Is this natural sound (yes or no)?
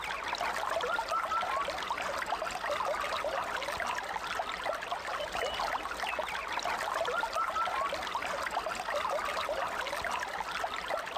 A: yes